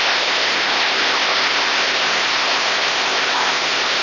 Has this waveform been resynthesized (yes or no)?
yes